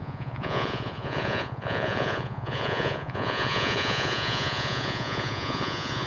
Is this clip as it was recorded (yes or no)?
no